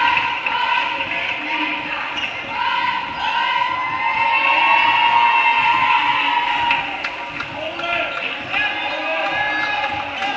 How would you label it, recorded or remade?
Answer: recorded